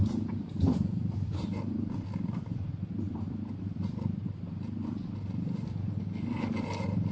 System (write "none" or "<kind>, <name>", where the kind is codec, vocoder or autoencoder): none